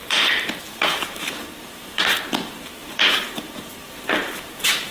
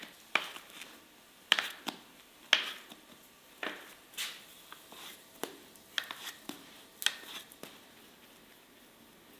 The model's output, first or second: first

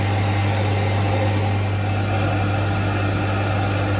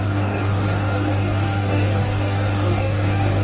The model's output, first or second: second